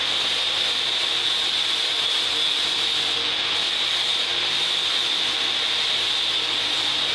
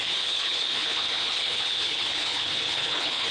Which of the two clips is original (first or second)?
first